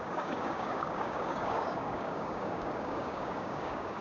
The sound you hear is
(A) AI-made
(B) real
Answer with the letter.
A